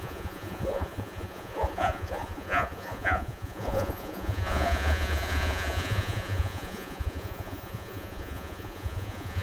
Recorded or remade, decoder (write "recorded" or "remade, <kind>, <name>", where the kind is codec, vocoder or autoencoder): remade, vocoder, Vocos